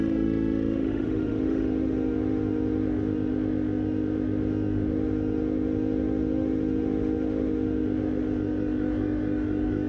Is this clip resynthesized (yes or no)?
yes